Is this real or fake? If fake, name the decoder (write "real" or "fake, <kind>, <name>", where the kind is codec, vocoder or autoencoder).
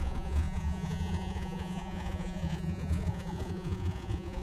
fake, vocoder, Vocos